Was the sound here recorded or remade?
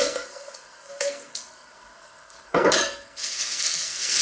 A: remade